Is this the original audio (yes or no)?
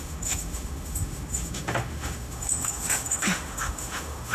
no